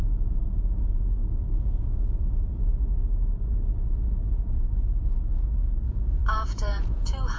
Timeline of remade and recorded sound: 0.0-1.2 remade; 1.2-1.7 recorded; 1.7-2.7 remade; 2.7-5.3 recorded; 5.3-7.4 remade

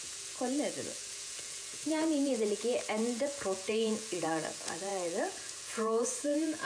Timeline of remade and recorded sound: 0.0-6.7 remade

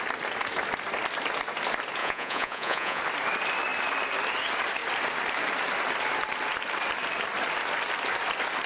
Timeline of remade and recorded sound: 0.0-2.0 recorded; 2.0-3.0 remade; 3.0-8.7 recorded

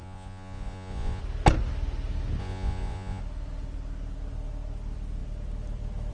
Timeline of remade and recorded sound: 0.0-1.2 remade; 1.2-2.4 recorded; 2.4-3.2 remade; 3.2-6.1 recorded

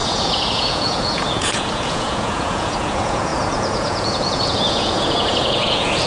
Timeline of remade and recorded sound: 0.0-6.1 remade

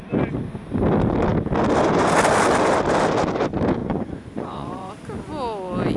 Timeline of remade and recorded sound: 0.0-3.8 recorded; 3.8-4.9 remade; 4.9-6.0 recorded

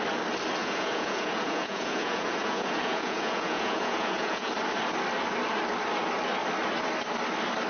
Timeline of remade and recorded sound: 0.0-0.6 recorded; 0.6-4.5 remade; 4.5-7.7 recorded